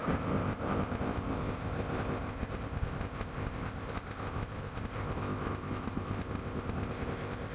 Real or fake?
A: fake